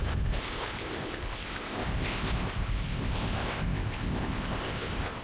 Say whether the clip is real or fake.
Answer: fake